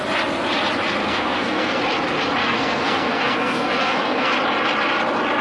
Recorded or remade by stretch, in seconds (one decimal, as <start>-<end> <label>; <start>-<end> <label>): 0.0-1.0 recorded; 1.0-1.8 remade; 1.8-2.4 recorded; 2.4-4.3 remade; 4.3-5.4 recorded